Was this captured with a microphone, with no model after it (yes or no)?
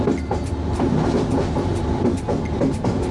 yes